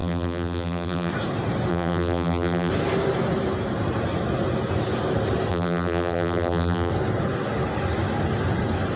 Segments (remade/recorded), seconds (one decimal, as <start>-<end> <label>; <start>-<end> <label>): 0.0-1.1 remade; 1.1-1.7 recorded; 1.7-2.7 remade; 2.7-5.5 recorded; 5.5-6.9 remade; 6.9-9.0 recorded